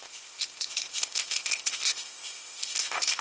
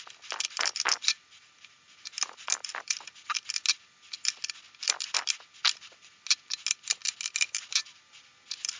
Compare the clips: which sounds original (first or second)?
second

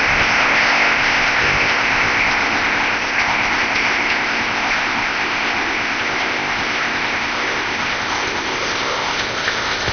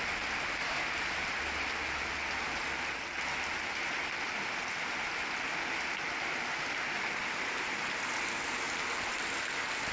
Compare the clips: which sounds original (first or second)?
second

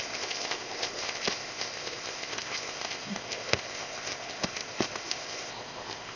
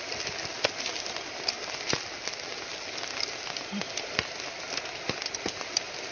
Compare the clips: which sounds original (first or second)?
second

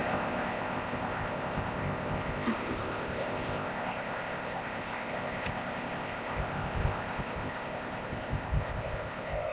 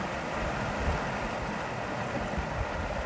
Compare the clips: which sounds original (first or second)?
second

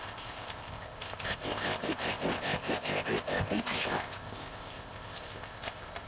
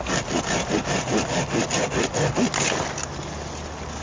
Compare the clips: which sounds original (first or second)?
second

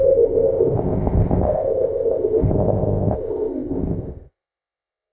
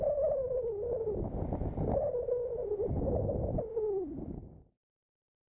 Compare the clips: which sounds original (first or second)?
second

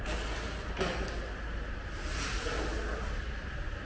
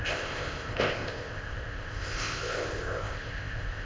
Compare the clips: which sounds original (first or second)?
first